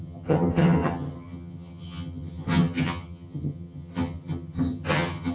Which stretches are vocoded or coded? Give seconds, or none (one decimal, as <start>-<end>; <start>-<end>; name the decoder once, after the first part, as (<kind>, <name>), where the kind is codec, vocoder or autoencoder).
0.0-5.3 (vocoder, HiFi-GAN)